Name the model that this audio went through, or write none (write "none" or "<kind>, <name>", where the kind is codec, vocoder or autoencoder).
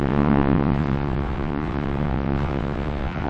vocoder, WaveNeXt